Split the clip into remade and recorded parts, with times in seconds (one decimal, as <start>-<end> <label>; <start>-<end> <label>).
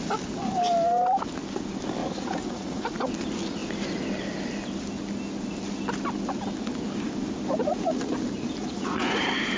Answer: 0.0-2.0 recorded; 2.0-2.9 remade; 2.9-7.6 recorded; 7.6-8.1 remade; 8.1-8.6 recorded; 8.6-9.2 remade; 9.2-9.6 recorded